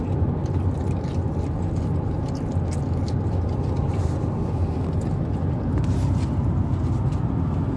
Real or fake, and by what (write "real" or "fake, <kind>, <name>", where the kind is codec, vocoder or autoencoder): real